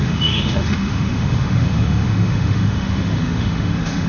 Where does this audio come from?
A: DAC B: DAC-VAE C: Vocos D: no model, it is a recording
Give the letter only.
B